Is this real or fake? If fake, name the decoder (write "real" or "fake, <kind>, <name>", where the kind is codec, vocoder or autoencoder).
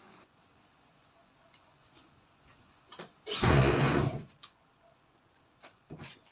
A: fake, vocoder, Vocos